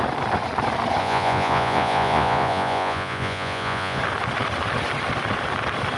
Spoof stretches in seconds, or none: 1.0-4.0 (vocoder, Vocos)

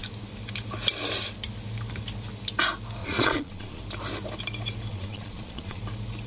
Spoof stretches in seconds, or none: 3.0-3.8 (vocoder, Vocos); 4.9-5.8

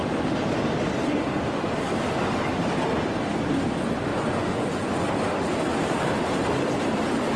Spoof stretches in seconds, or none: 4.1-5.1 (vocoder, Vocos)

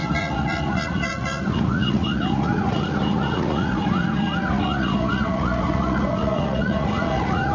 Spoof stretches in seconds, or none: 0.0-7.5 (vocoder, Vocos)

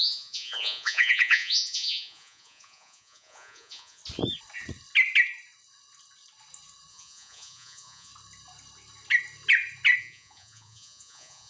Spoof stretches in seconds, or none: 0.0-4.0 (vocoder, Vocos); 6.9-8.1; 10.0-11.5

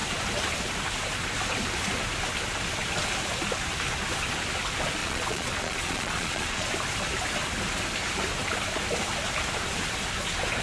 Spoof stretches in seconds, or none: 5.0-6.7 (vocoder, Vocos)

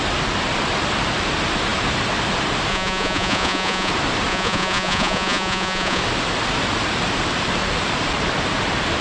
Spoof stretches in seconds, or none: 2.7-3.9 (vocoder, Vocos); 4.3-6.0